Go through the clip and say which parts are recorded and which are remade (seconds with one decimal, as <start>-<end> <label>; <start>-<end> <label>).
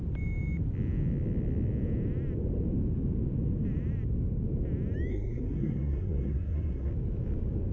0.0-5.1 recorded; 5.1-6.9 remade; 6.9-7.7 recorded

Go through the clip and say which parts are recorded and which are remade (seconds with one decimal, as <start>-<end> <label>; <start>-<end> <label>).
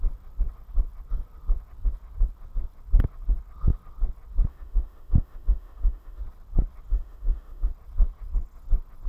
0.0-4.5 recorded; 4.5-6.2 remade; 6.2-6.9 recorded; 6.9-7.7 remade; 7.7-9.1 recorded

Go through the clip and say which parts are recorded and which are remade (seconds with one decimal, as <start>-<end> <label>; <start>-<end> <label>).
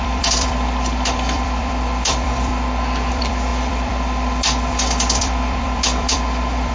0.0-2.5 remade; 2.5-3.1 recorded; 3.1-6.7 remade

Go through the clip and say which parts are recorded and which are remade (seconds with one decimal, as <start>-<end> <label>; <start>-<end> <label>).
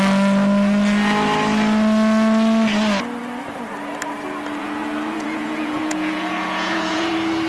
0.0-4.6 recorded; 4.6-7.1 remade; 7.1-7.5 recorded